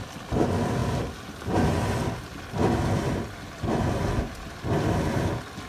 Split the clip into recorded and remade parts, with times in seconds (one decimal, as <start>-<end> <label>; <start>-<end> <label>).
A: 0.0-5.7 recorded